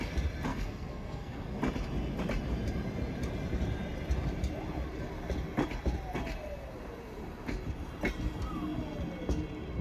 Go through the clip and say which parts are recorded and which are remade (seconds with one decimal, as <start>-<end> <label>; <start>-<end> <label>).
0.0-0.5 recorded; 0.5-1.6 remade; 1.6-9.8 recorded